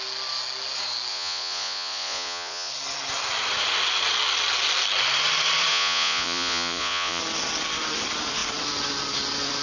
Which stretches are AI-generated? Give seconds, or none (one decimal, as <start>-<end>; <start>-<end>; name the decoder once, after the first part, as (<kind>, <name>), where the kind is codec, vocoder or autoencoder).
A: 1.1-2.7 (vocoder, Vocos); 5.7-7.2